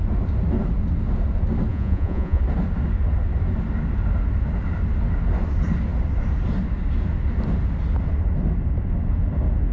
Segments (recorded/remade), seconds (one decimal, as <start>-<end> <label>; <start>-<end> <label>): 0.0-1.7 recorded; 1.7-2.4 remade; 2.4-9.7 recorded